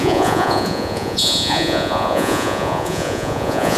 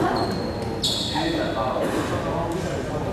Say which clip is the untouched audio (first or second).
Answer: second